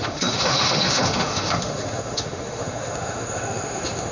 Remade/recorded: remade